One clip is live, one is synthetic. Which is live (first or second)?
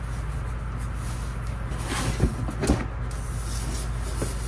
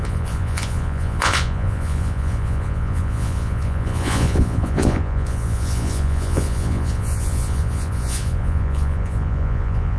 first